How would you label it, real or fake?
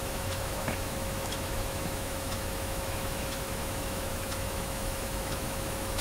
fake